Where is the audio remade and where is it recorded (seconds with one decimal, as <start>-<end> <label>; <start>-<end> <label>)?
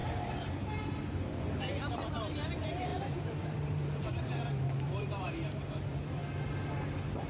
0.0-6.2 remade; 6.2-7.3 recorded